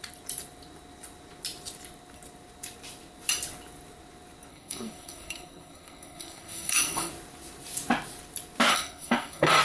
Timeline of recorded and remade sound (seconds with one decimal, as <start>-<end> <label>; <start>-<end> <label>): 0.0-4.5 recorded; 4.5-7.1 remade; 7.1-8.7 recorded; 8.7-9.6 remade